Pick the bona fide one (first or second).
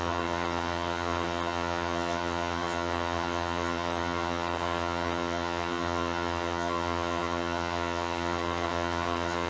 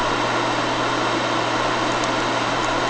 second